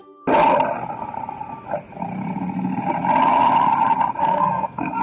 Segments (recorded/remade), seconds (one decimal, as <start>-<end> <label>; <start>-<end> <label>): 0.0-4.2 recorded; 4.2-5.0 remade